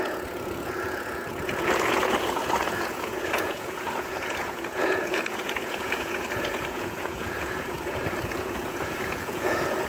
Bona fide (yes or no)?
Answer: no